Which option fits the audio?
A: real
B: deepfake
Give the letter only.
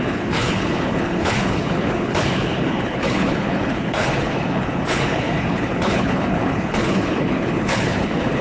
B